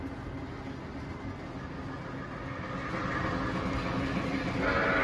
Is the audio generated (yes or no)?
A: no